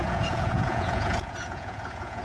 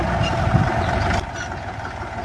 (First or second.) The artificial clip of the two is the first